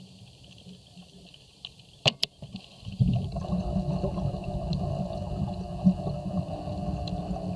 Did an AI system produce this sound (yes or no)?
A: no